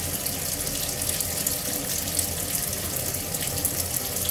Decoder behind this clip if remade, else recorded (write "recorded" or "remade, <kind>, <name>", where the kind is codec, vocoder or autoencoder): recorded